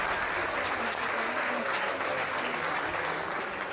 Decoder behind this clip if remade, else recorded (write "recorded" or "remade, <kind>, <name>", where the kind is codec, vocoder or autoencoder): recorded